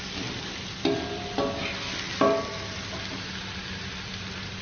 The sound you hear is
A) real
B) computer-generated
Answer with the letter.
A